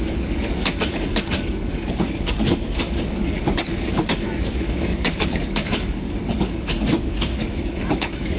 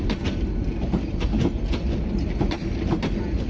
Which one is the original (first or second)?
second